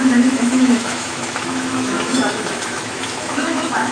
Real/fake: fake